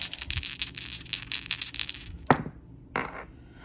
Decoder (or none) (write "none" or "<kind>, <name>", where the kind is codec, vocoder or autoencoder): none